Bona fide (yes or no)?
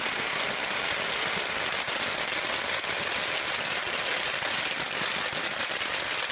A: yes